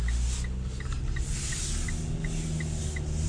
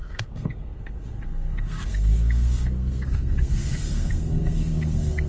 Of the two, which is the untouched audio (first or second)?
first